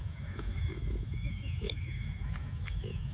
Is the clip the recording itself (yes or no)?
no